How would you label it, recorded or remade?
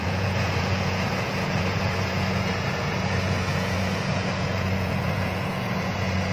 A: remade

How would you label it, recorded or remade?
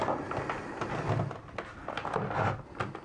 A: recorded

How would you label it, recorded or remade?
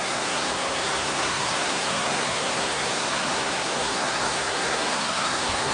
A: remade